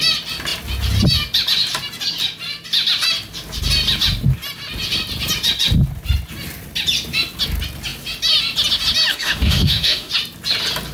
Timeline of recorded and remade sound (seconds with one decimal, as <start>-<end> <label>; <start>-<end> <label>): 0.0-9.1 recorded; 9.1-10.1 remade; 10.1-10.9 recorded